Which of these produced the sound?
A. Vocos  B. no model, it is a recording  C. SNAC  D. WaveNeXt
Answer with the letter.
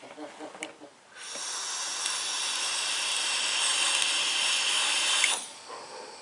B